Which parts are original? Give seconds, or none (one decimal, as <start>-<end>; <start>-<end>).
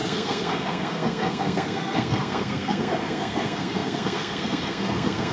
none